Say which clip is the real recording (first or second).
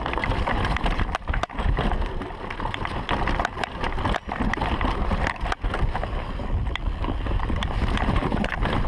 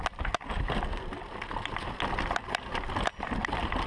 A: second